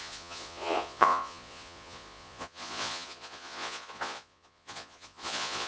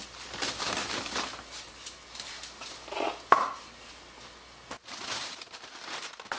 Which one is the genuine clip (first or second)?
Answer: second